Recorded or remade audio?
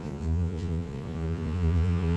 remade